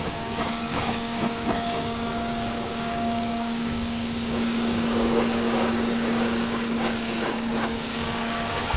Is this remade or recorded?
remade